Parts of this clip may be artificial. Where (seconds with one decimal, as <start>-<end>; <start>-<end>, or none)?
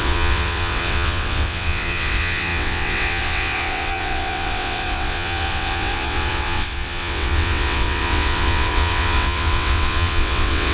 0.0-10.7